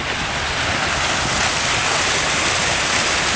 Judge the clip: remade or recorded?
recorded